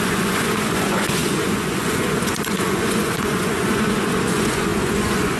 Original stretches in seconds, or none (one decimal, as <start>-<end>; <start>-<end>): none